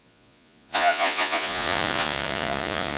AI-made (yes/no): yes